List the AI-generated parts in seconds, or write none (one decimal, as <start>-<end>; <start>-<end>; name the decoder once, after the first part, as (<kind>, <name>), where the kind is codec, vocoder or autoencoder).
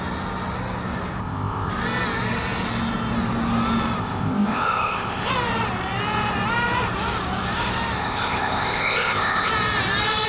1.2-1.7 (codec, ZipCodec); 4.0-5.3; 8.0-9.5